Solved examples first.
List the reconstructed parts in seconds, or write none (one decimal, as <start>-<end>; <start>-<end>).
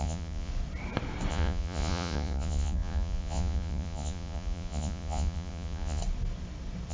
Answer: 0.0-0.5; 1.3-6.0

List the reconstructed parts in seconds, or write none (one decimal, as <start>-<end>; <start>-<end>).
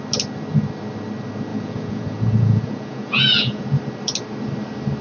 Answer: 1.5-3.8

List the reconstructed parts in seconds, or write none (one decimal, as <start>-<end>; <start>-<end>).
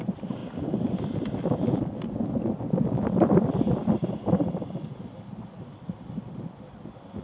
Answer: none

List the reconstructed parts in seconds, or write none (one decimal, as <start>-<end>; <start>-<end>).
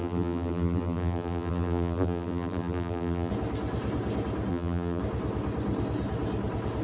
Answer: 0.0-3.3; 4.5-5.0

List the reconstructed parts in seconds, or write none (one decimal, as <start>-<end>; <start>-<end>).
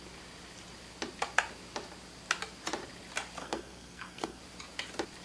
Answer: 3.4-4.4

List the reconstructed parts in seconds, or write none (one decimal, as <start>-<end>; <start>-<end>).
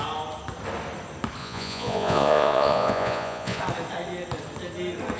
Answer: 1.4-3.6